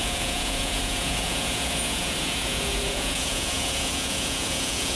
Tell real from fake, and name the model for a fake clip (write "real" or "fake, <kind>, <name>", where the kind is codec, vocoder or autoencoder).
fake, vocoder, Vocos